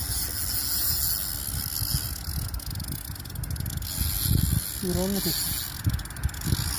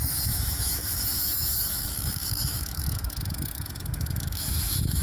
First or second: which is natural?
first